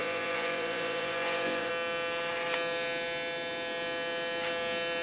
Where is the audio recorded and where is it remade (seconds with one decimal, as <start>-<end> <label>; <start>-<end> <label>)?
0.0-1.7 remade; 1.7-5.0 recorded